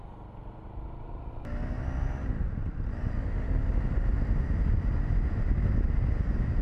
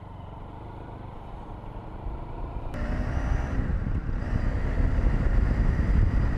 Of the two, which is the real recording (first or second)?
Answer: first